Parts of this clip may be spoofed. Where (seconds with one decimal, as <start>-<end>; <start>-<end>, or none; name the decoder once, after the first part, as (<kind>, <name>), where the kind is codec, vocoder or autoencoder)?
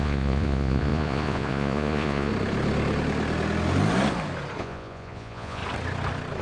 0.0-2.3 (vocoder, Vocos); 4.6-5.6